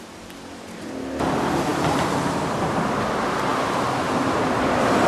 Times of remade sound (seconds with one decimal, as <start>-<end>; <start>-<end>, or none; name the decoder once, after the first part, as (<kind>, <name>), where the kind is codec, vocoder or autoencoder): none